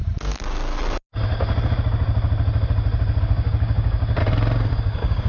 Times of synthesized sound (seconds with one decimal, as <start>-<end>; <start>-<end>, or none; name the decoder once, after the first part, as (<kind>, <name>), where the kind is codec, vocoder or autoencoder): 3.2-4.2 (codec, DAC); 4.7-5.3